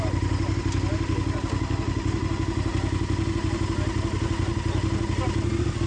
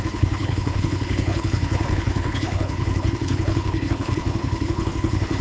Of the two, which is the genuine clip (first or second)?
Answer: first